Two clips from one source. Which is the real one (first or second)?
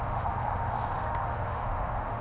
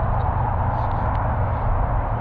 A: second